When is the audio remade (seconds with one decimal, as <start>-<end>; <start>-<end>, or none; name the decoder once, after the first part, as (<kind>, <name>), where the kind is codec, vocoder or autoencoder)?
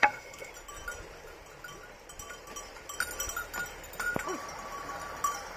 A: 0.0-0.5 (codec, SNAC)